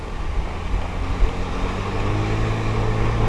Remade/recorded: recorded